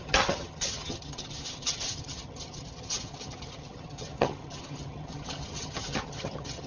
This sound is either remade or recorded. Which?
remade